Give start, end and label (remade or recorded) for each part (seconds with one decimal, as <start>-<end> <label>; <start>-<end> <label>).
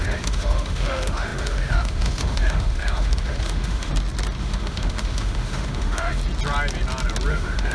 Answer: 0.0-3.9 remade; 3.9-4.4 recorded; 4.4-6.2 remade; 6.2-7.3 recorded; 7.3-7.7 remade